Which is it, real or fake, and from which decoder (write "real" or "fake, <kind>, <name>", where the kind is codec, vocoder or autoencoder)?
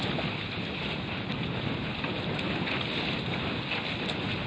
real